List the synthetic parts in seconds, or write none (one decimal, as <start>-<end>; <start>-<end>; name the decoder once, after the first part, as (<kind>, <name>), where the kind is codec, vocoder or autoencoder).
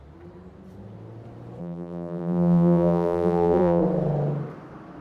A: 1.6-3.8 (vocoder, BigVGAN v2)